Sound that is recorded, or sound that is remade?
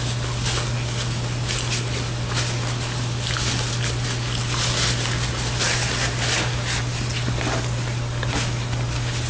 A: recorded